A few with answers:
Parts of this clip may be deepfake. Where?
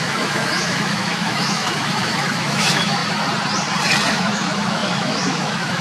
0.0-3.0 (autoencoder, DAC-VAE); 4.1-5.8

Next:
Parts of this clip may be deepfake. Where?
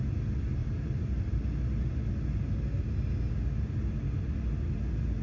0.6-1.6 (vocoder, BigVGAN v2)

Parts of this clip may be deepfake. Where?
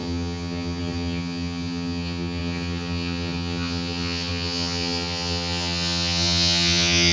0.0-7.1 (vocoder, HiFi-GAN)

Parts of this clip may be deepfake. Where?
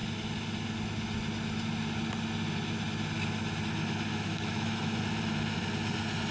4.1-5.0 (autoencoder, DAC-VAE)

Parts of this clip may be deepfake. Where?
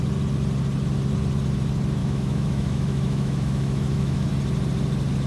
2.0-4.3 (autoencoder, DAC-VAE)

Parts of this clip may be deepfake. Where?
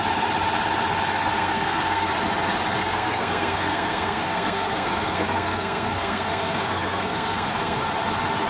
1.4-2.1 (codec, SNAC); 2.8-7.9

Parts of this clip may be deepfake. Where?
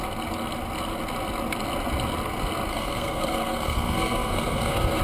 2.7-5.0 (codec, SNAC)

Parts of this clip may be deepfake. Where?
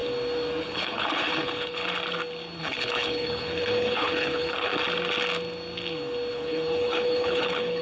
0.6-1.8 (codec, HILCodec); 2.6-4.7; 6.3-7.8